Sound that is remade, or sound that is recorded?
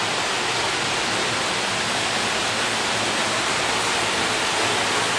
recorded